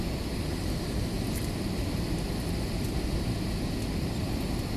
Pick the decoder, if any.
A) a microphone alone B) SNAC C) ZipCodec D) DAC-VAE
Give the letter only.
A